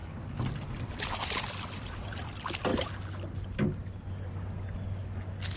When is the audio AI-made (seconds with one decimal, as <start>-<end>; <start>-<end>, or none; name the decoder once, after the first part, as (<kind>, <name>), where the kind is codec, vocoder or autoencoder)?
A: 1.3-2.7 (vocoder, BigVGAN v2)